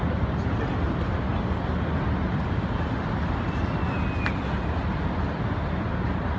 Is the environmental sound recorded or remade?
recorded